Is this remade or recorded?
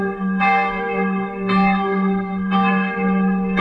remade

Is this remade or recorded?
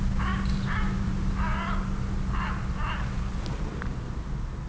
recorded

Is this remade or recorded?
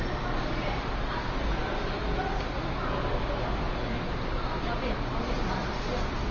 recorded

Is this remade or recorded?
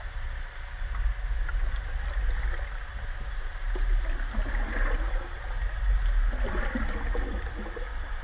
recorded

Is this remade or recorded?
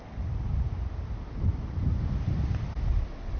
recorded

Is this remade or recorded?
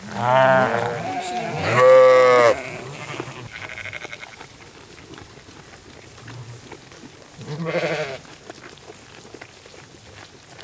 recorded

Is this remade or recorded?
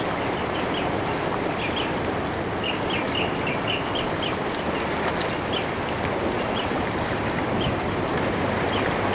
recorded